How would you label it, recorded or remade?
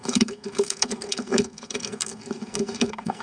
remade